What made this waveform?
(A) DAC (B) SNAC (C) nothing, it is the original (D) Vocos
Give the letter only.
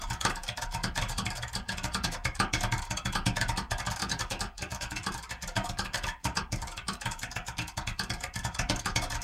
A